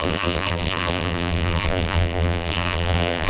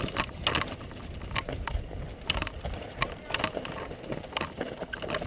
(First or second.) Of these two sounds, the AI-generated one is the first